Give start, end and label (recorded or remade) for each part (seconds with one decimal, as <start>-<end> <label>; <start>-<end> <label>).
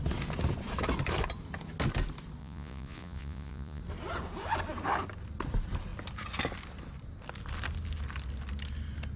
0.0-2.4 recorded; 2.4-3.8 remade; 3.8-9.2 recorded